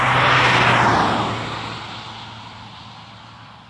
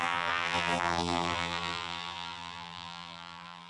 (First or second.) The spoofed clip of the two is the second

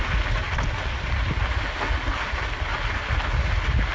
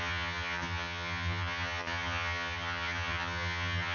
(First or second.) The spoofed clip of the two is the second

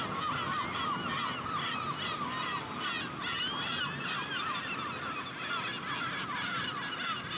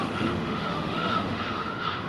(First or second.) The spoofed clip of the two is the second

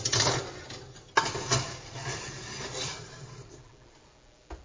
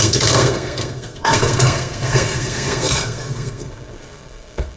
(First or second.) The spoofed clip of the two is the second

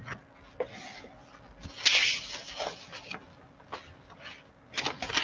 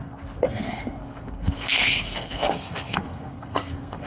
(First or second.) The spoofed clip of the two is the second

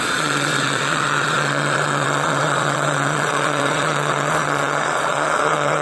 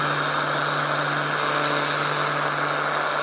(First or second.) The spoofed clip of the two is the first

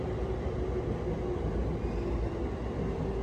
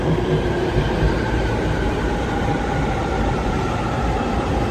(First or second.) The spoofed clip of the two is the second